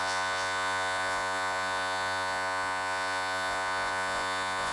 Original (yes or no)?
no